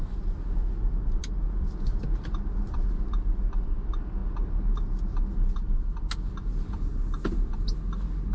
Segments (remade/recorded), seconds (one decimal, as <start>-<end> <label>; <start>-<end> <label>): 0.0-8.3 recorded